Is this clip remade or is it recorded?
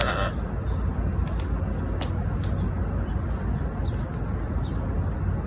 recorded